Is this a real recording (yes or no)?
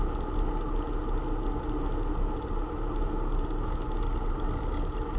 yes